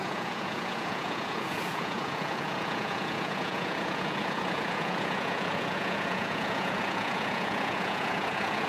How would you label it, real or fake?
fake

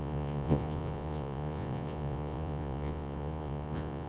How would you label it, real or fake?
fake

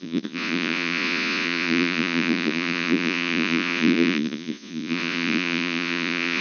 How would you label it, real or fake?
fake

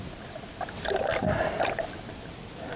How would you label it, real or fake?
real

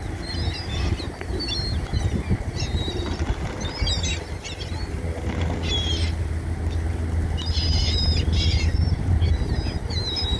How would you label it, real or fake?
real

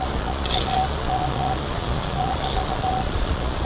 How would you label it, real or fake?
fake